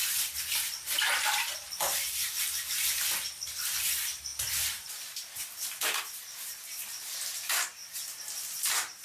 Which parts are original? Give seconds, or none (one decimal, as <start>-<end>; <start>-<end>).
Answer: 7.8-8.3

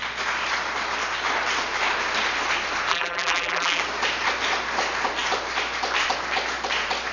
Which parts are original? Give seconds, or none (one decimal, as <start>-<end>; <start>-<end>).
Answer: 0.0-2.9; 3.8-7.1

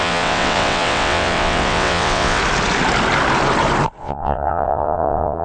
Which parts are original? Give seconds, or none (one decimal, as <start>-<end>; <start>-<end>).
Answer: 2.4-4.0

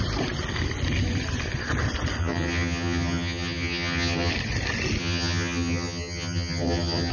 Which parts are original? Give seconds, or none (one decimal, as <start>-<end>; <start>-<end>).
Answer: 0.0-2.2; 4.3-5.0

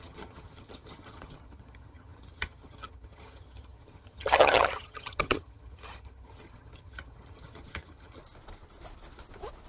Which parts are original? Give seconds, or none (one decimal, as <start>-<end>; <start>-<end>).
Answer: 8.2-9.7

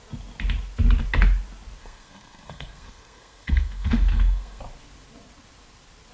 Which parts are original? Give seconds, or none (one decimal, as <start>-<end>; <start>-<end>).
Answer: 0.0-1.8; 4.6-6.1

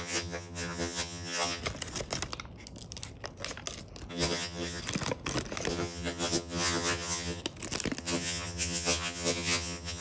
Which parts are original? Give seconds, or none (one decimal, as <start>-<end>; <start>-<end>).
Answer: 1.6-4.1; 4.8-5.7; 7.4-8.0

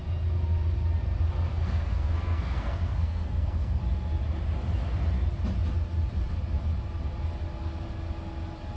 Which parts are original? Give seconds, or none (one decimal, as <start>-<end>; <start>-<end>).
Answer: 0.0-1.5; 3.8-8.8